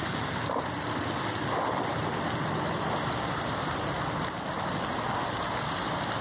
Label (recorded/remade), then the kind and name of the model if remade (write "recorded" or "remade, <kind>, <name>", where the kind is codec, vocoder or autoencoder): recorded